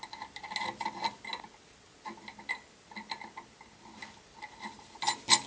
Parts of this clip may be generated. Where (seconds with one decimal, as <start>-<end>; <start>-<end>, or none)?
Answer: none